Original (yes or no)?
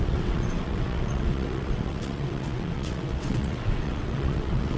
no